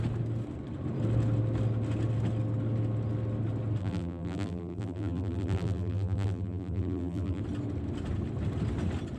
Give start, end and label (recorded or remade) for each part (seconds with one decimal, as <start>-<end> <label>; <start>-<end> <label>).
0.0-3.8 recorded; 3.8-7.4 remade; 7.4-9.2 recorded